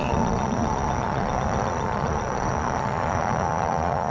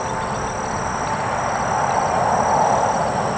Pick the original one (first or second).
second